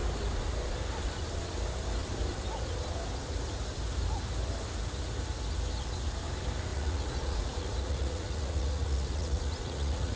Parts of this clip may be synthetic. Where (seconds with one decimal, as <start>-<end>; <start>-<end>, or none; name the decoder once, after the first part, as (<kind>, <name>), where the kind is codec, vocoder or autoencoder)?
6.7-10.2 (vocoder, Vocos)